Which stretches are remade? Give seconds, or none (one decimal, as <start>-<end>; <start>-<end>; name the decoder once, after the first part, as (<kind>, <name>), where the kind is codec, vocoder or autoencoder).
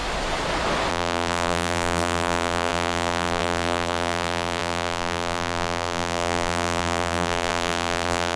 0.9-8.4 (vocoder, BigVGAN v2)